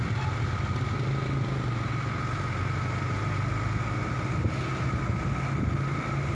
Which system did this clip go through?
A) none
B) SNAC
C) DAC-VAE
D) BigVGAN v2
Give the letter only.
A